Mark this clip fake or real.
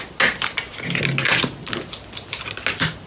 real